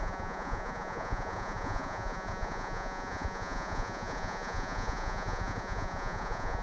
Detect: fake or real fake